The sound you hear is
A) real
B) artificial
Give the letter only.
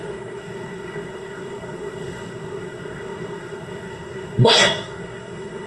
B